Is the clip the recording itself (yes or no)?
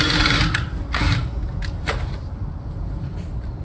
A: yes